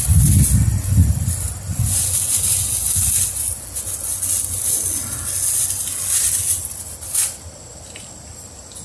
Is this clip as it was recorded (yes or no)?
yes